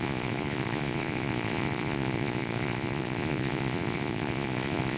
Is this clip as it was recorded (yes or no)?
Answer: no